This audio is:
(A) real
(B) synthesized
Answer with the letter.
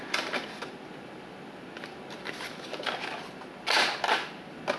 A